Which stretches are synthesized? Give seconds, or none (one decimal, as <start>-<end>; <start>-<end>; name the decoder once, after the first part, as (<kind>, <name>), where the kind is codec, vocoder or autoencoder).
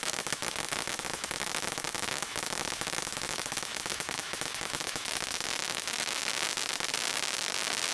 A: 0.0-6.2 (autoencoder, DAC-VAE)